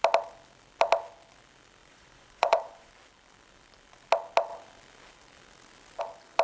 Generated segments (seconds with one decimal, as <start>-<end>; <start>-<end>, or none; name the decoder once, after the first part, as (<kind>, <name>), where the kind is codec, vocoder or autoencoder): 1.8-2.9 (vocoder, Vocos)